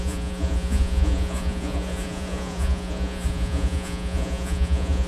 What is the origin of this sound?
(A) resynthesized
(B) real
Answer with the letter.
A